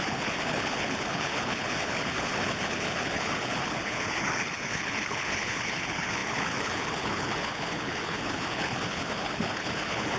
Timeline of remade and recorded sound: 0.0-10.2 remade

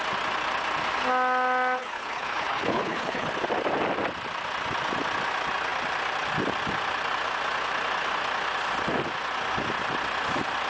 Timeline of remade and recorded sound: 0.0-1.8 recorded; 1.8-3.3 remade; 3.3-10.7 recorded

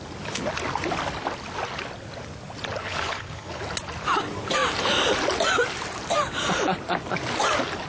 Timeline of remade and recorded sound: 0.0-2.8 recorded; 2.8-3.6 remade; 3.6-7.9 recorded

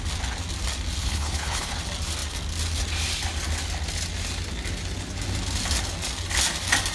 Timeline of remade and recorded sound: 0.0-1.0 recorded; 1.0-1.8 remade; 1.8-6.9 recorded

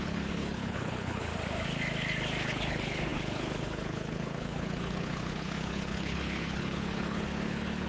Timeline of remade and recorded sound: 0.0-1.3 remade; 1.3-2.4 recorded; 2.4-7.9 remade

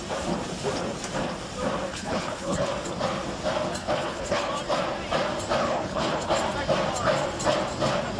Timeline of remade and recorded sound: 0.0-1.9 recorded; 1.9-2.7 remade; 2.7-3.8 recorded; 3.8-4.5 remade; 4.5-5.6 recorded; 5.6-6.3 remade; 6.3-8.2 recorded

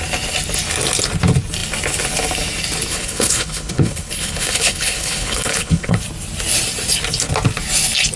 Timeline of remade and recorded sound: 0.0-2.9 recorded; 2.9-6.0 remade; 6.0-8.2 recorded

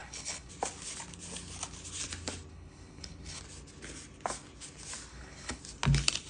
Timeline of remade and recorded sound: 0.0-0.5 remade; 0.5-2.5 recorded; 2.5-3.4 remade; 3.4-5.1 recorded; 5.1-5.6 remade; 5.6-6.3 recorded